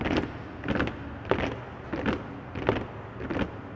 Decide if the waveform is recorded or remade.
recorded